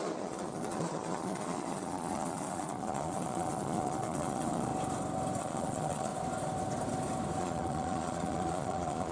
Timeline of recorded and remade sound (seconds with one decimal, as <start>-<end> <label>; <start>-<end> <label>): 0.0-4.7 remade; 4.7-5.4 recorded; 5.4-6.1 remade; 6.1-7.4 recorded; 7.4-9.1 remade